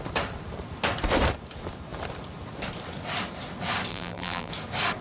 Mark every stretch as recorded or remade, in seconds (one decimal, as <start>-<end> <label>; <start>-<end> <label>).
0.0-3.9 recorded; 3.9-4.5 remade; 4.5-5.0 recorded